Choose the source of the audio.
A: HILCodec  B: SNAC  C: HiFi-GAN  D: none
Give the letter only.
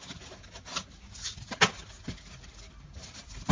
D